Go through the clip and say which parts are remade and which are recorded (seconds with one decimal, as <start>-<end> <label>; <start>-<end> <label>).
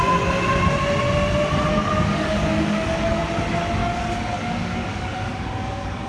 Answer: 0.0-1.7 recorded; 1.7-3.2 remade; 3.2-3.8 recorded; 3.8-6.1 remade